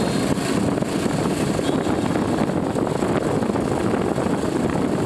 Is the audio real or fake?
real